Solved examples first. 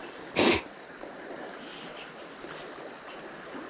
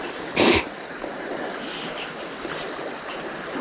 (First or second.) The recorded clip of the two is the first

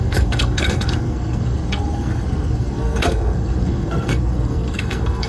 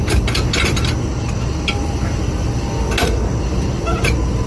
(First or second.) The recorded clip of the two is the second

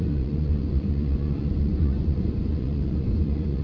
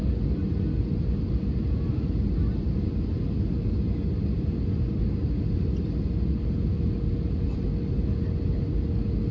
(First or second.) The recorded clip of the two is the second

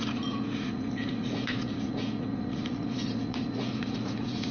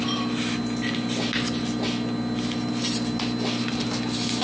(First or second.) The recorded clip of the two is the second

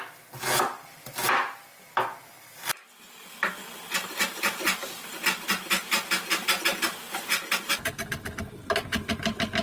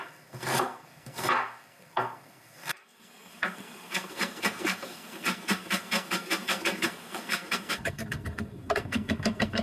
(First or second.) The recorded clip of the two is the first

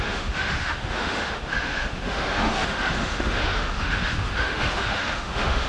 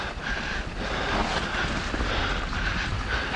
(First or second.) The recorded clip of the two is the second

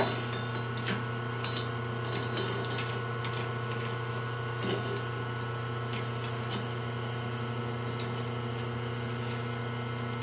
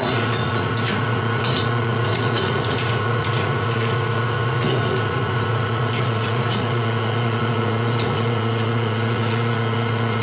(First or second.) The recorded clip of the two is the first